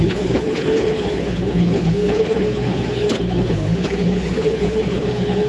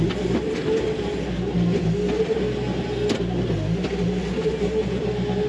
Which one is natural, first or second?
second